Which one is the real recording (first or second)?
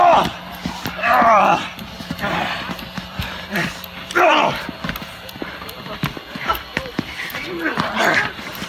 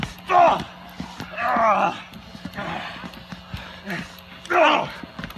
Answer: second